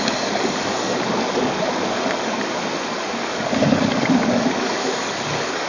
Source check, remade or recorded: remade